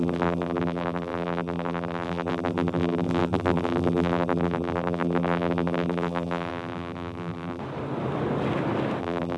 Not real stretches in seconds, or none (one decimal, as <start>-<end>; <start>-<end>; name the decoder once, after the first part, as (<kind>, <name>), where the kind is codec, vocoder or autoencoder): 0.0-7.6 (vocoder, BigVGAN v2); 9.0-9.4